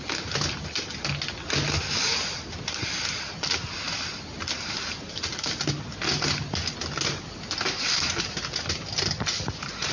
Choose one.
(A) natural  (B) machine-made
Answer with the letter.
A